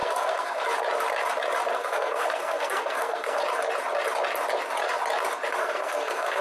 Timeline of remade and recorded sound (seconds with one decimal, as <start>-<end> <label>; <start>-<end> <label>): 0.0-0.6 remade; 0.6-1.7 recorded; 1.7-3.4 remade; 3.4-5.6 recorded; 5.6-6.4 remade